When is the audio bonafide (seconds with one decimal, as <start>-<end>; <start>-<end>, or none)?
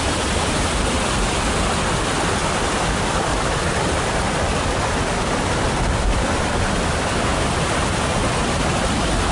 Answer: 7.3-8.7